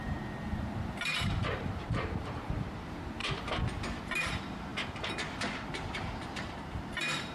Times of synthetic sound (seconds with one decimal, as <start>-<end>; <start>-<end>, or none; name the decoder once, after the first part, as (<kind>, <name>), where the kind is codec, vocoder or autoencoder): 0.0-3.2 (vocoder, BigVGAN v2); 4.2-4.7; 5.7-7.3